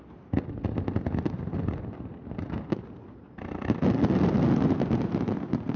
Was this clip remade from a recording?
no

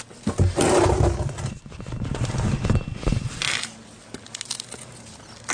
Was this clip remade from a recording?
no